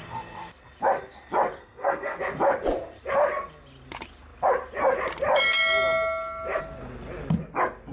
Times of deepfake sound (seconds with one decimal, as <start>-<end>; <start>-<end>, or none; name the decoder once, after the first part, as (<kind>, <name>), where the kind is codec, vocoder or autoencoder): 1.6-2.2 (codec, SNAC)